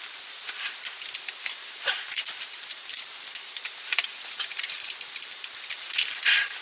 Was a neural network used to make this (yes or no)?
yes